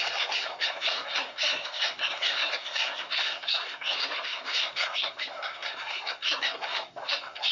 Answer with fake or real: fake